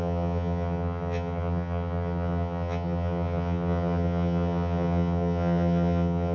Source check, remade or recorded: remade